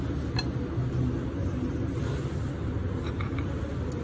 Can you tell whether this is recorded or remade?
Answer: recorded